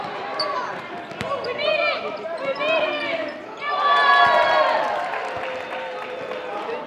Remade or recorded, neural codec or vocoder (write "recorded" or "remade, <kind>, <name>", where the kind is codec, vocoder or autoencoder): remade, vocoder, BigVGAN v2